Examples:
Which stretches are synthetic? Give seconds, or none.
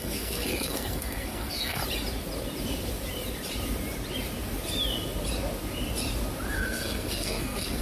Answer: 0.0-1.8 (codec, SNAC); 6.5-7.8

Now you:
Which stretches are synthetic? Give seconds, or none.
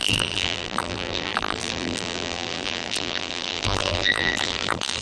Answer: 0.0-5.0 (vocoder, BigVGAN v2)